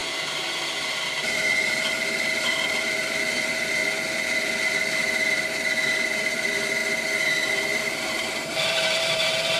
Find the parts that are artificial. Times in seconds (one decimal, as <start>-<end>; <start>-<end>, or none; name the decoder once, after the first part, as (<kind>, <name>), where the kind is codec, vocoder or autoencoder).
0.0-3.8 (vocoder, BigVGAN v2); 6.1-6.8; 7.5-9.6